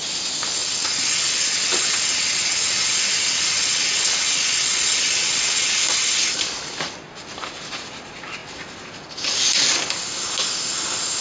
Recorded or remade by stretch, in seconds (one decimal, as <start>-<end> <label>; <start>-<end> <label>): 0.0-0.6 recorded; 0.6-5.7 remade; 5.7-11.2 recorded